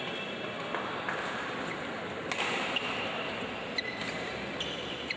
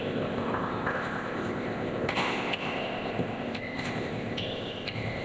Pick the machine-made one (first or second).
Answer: second